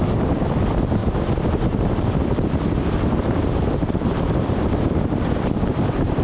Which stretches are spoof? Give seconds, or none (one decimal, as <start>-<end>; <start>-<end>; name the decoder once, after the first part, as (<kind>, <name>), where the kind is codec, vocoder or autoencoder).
0.0-1.0 (vocoder, BigVGAN v2); 2.0-6.2